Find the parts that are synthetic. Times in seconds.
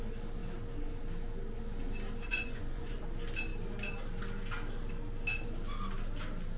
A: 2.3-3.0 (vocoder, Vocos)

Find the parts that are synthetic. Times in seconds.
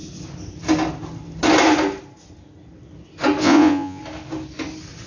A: 3.4-4.0 (vocoder, Vocos)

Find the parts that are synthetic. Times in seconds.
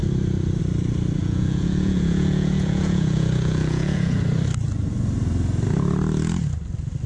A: 1.2-4.2 (vocoder, Vocos)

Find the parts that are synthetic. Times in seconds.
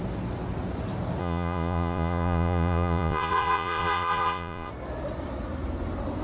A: 1.2-4.7 (vocoder, Vocos)